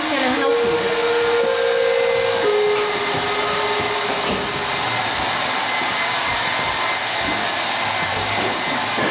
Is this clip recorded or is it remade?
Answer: recorded